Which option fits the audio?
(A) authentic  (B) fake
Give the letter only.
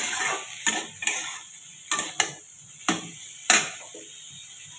A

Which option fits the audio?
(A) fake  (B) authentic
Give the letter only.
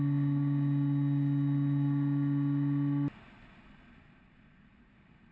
B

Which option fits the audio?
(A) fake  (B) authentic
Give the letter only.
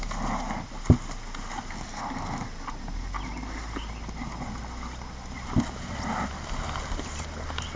B